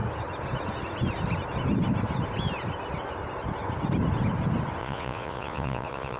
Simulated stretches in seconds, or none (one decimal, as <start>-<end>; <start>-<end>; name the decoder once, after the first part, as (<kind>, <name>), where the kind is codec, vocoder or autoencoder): 4.8-6.2 (vocoder, Vocos)